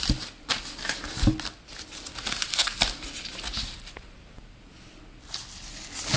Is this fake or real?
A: real